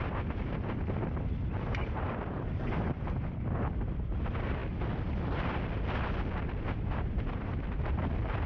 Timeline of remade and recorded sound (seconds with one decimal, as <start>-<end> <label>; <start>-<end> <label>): 0.0-4.6 remade; 4.6-6.4 recorded; 6.4-8.5 remade